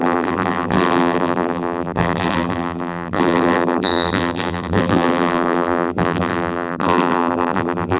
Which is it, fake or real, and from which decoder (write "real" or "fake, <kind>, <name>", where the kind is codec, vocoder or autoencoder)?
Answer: fake, vocoder, BigVGAN v2